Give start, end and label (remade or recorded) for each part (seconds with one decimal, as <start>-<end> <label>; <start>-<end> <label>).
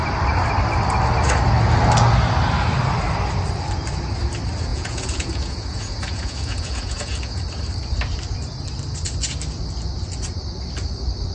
0.0-4.7 recorded; 4.7-7.4 remade; 7.4-11.3 recorded